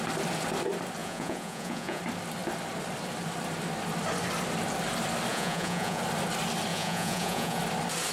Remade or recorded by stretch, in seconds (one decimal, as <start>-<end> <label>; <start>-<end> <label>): 0.0-1.0 recorded; 1.0-2.0 remade; 2.0-5.3 recorded; 5.3-6.0 remade; 6.0-6.7 recorded; 6.7-7.6 remade; 7.6-8.1 recorded